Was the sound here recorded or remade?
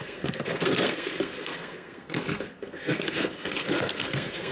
remade